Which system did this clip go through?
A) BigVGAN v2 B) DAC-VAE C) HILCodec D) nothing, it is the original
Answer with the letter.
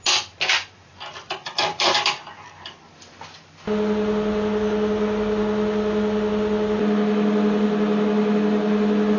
D